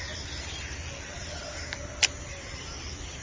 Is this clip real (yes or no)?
yes